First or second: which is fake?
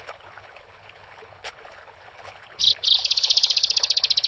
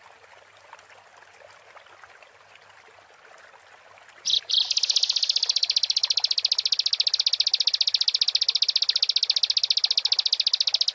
first